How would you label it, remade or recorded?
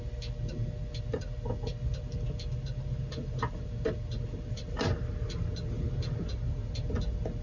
recorded